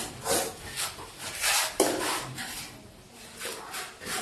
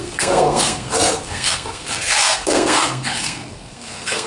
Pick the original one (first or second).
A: first